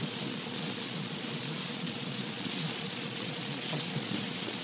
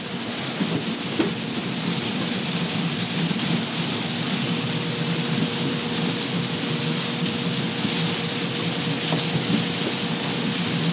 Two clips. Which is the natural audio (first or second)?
second